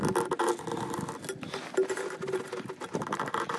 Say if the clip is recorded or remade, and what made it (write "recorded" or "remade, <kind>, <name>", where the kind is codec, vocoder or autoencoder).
recorded